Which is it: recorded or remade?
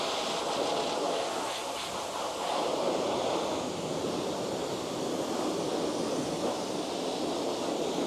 recorded